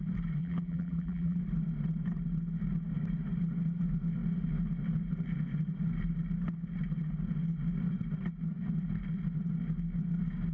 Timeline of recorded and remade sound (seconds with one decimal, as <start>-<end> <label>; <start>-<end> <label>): 0.0-0.4 recorded; 0.4-1.4 remade; 1.4-10.5 recorded